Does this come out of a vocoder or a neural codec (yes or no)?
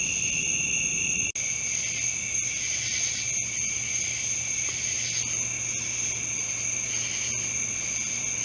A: no